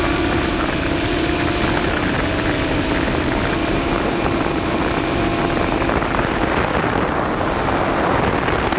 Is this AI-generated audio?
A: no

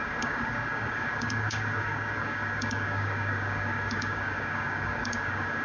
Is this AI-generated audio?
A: yes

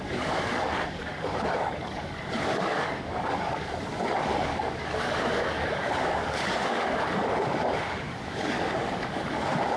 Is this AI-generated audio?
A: yes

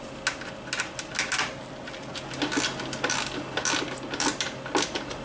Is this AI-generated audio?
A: no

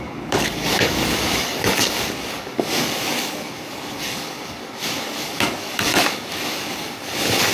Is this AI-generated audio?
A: yes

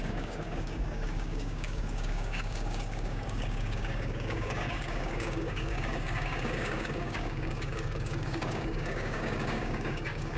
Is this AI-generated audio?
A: yes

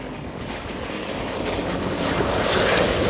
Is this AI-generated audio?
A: yes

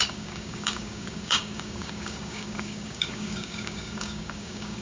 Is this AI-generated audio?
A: yes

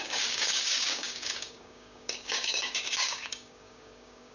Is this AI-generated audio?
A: yes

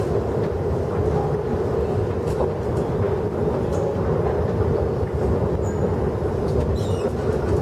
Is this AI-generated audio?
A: no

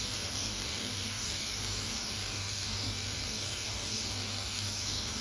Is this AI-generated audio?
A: yes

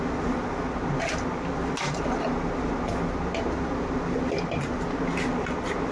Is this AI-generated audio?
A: no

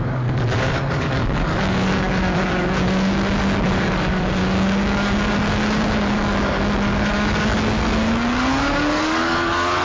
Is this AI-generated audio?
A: yes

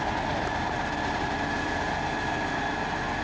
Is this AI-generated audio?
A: no